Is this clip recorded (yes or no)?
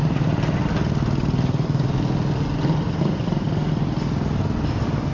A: yes